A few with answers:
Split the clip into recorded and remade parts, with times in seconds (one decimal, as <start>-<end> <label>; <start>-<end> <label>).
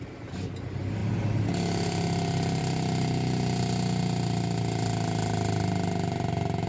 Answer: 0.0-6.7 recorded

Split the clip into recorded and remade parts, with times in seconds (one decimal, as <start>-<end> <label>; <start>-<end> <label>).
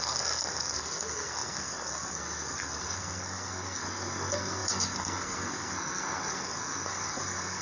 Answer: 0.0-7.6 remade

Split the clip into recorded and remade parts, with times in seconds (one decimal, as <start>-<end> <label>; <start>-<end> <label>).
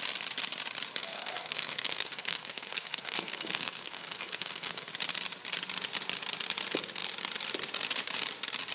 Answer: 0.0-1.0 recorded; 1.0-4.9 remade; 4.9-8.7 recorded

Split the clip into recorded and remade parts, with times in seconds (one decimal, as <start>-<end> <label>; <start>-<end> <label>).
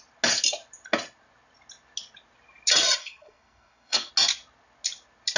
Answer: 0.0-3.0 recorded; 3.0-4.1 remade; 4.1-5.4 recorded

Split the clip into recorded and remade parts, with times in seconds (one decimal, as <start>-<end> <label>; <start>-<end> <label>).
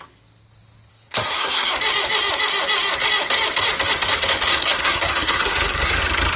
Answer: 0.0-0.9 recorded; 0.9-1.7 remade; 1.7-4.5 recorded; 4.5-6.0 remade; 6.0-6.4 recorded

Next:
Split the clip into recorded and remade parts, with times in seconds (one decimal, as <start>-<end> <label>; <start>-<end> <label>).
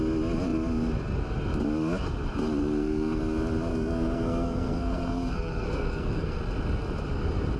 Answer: 0.0-2.6 recorded; 2.6-3.2 remade; 3.2-3.7 recorded; 3.7-6.4 remade; 6.4-7.6 recorded